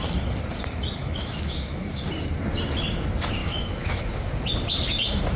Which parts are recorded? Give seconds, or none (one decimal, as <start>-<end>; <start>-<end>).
0.0-1.0; 1.9-3.4; 4.1-5.4